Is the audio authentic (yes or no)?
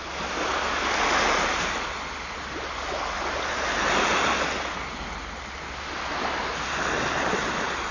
yes